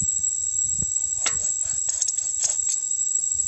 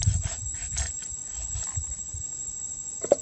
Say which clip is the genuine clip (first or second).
second